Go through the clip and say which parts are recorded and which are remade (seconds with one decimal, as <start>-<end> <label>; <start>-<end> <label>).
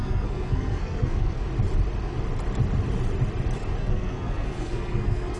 0.0-1.4 remade; 1.4-3.8 recorded; 3.8-5.4 remade